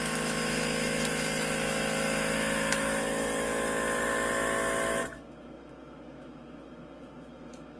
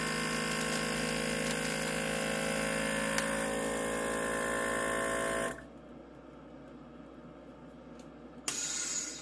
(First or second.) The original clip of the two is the second